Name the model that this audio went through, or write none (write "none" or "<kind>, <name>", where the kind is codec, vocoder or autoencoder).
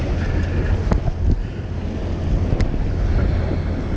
none